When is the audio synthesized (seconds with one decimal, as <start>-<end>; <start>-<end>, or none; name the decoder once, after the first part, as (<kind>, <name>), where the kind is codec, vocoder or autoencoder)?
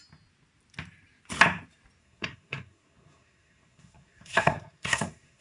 2.0-5.4 (codec, SNAC)